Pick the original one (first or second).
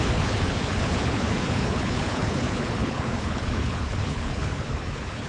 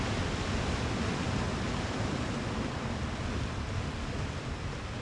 second